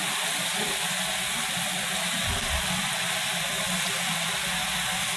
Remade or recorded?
recorded